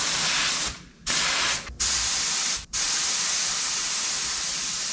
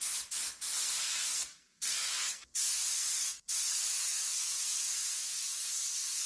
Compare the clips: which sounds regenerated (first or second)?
second